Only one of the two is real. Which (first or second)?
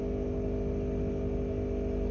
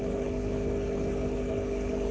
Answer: first